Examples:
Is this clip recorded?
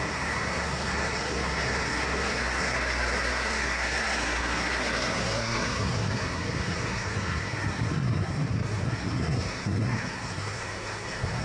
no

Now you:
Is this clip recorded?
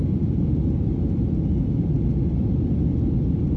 yes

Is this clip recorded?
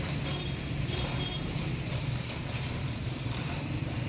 no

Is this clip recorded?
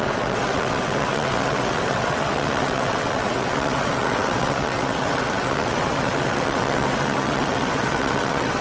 no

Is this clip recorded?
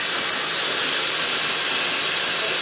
yes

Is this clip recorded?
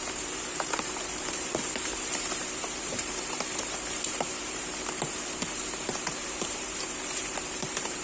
no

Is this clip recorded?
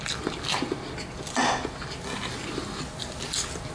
yes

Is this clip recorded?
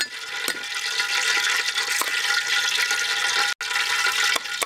yes